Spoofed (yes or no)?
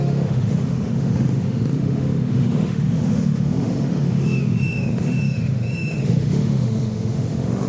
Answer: yes